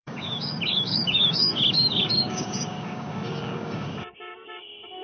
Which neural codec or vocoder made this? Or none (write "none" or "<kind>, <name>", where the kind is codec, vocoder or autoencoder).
codec, DAC